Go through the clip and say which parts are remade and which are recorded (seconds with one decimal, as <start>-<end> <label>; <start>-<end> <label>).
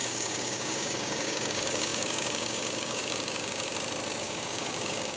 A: 0.0-3.7 remade; 3.7-4.2 recorded; 4.2-5.2 remade